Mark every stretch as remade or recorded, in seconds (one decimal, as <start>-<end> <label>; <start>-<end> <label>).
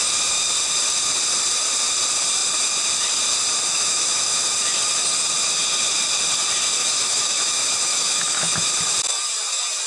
0.0-3.7 recorded; 3.7-4.5 remade; 4.5-6.8 recorded; 6.8-8.7 remade; 8.7-9.9 recorded